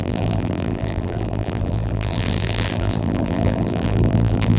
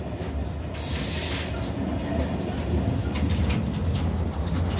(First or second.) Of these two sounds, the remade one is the first